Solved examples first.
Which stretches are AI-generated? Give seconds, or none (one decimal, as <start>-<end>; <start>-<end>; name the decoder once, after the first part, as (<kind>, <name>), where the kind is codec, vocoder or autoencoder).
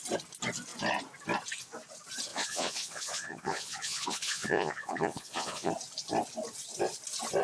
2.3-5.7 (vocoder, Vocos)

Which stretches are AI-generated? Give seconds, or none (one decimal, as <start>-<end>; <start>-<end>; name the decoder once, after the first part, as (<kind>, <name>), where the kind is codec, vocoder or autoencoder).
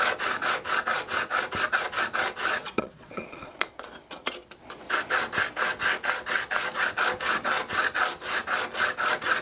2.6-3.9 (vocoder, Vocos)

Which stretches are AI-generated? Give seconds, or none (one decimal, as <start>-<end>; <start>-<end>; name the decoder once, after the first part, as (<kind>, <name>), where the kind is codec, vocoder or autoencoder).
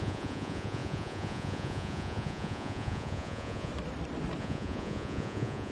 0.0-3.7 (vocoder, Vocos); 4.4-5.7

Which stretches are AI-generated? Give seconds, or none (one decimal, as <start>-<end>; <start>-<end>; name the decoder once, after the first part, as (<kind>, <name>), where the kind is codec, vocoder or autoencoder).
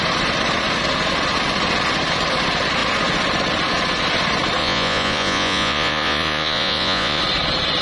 4.6-7.2 (vocoder, Vocos)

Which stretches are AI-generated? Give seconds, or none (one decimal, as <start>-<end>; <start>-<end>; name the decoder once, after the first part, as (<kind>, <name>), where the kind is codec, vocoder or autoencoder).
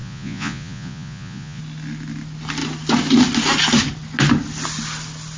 0.0-1.6 (vocoder, Vocos)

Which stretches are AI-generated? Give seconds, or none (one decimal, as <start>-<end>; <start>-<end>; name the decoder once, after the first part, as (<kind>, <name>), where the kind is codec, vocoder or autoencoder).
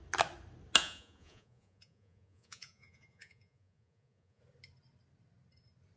0.8-4.4 (vocoder, Vocos)